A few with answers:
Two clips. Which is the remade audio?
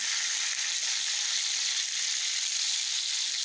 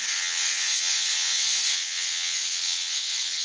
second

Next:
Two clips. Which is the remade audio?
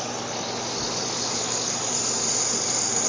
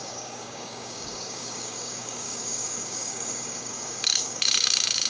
second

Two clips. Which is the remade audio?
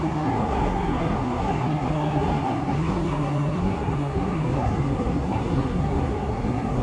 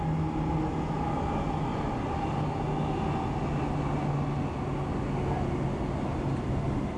first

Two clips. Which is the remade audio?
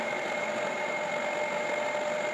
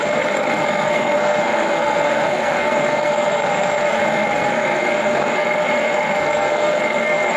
second